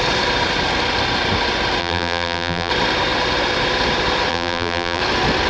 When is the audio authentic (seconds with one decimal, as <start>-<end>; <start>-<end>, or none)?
0.0-1.8; 2.7-4.3; 5.0-5.5